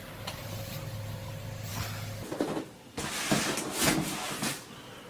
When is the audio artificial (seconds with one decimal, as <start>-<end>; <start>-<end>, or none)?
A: none